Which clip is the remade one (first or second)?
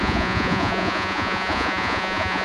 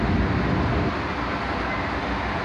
first